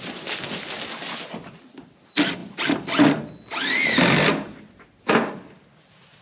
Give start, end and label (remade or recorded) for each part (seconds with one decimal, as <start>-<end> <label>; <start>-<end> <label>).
0.0-6.2 recorded